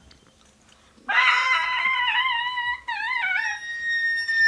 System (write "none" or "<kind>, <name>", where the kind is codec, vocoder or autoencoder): none